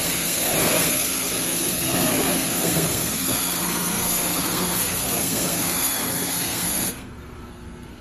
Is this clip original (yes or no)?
no